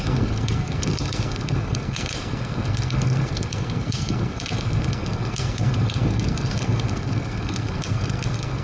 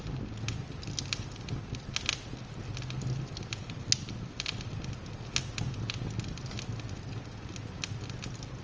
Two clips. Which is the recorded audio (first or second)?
second